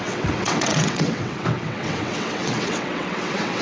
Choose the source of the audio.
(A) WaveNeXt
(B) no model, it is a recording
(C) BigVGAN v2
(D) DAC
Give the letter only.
A